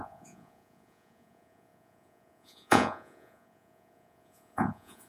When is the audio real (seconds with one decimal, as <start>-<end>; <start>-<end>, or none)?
none